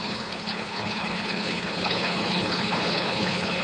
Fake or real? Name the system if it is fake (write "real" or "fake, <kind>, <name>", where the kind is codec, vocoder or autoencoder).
fake, codec, HILCodec